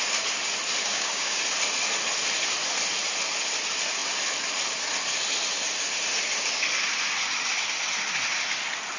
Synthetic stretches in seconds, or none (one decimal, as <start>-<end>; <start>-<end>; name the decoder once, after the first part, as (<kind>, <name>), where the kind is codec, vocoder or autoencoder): 0.8-1.4 (codec, DAC)